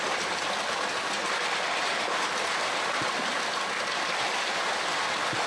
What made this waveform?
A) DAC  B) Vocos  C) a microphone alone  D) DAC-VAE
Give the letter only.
C